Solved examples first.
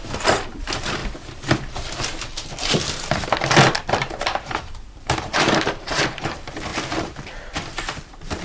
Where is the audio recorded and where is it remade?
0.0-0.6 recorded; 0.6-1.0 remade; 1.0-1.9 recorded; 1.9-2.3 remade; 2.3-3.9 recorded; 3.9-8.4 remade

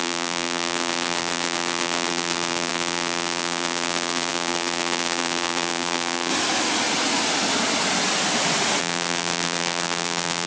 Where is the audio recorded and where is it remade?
0.0-6.3 remade; 6.3-8.8 recorded; 8.8-10.5 remade